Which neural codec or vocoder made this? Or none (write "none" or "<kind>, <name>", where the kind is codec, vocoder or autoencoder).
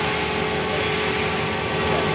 none